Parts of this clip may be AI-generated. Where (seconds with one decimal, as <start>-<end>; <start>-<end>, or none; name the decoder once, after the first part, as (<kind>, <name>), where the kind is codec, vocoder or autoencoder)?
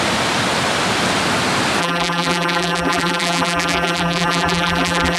1.8-5.2 (vocoder, BigVGAN v2)